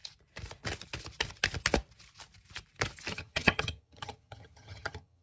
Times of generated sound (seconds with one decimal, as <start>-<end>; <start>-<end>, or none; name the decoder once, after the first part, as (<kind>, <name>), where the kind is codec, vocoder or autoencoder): 3.1-5.2 (vocoder, HiFi-GAN)